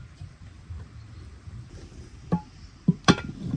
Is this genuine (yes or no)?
no